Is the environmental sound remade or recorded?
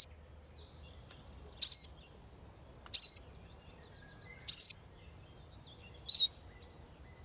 recorded